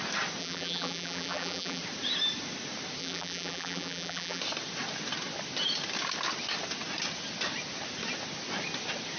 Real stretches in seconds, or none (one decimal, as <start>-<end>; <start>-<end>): 0.0-0.4; 1.8-3.0; 4.4-9.2